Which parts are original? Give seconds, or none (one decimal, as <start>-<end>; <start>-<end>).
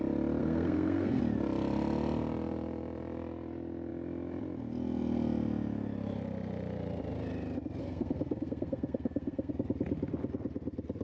0.0-0.4; 1.2-7.8; 9.5-11.0